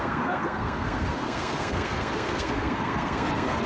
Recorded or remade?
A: remade